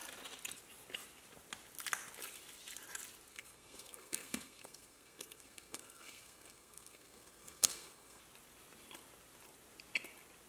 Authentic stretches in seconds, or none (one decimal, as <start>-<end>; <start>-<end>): 0.0-3.3; 8.2-10.5

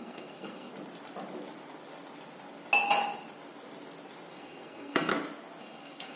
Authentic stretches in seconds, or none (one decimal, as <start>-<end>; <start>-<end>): 0.7-4.3; 5.1-5.6

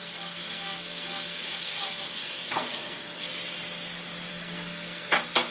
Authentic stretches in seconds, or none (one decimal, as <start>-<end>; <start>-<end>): 3.3-4.3

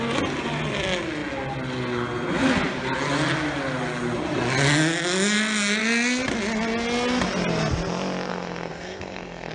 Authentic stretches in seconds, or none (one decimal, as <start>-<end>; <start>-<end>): 0.0-8.3

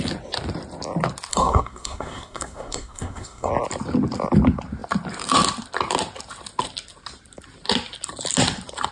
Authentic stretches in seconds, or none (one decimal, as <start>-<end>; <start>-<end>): 0.0-1.3; 3.5-8.9

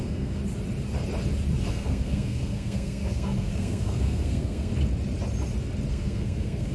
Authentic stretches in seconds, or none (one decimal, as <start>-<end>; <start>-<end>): 0.4-1.7; 4.7-5.9